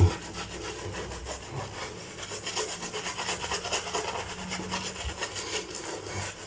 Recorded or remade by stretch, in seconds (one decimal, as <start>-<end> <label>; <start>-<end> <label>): 0.0-6.5 recorded

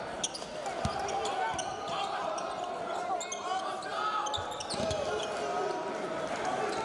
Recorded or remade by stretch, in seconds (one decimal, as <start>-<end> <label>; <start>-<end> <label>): 0.0-6.8 recorded

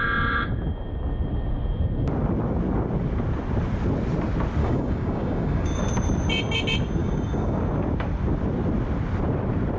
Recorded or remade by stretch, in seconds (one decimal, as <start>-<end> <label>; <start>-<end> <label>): 0.0-4.6 recorded; 4.6-5.8 remade; 5.8-7.0 recorded; 7.0-7.6 remade; 7.6-9.8 recorded

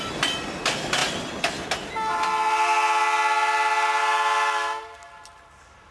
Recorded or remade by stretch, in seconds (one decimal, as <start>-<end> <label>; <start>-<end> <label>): 0.0-5.9 recorded

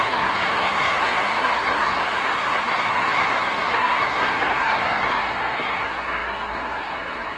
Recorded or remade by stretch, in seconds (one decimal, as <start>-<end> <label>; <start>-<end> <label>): 0.0-7.4 remade

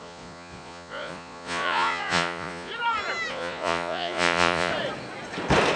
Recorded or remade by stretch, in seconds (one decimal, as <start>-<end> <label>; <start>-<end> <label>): 0.0-2.7 remade; 2.7-3.3 recorded; 3.3-4.7 remade; 4.7-5.8 recorded

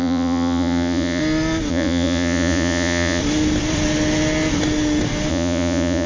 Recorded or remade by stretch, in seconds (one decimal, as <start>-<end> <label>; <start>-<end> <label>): 0.0-1.2 remade; 1.2-1.7 recorded; 1.7-3.2 remade; 3.2-5.3 recorded; 5.3-6.1 remade